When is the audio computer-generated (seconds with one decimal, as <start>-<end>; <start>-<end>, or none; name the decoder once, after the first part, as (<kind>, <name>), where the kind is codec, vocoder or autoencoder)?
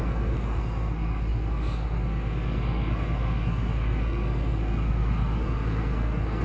0.0-6.4 (codec, SNAC)